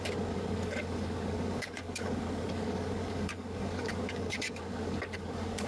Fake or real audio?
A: fake